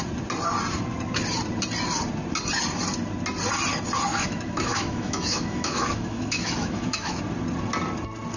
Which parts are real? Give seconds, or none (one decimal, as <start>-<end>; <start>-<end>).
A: 0.0-4.1; 7.2-8.4